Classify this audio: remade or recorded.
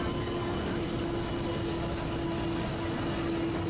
recorded